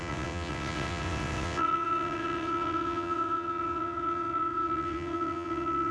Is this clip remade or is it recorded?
remade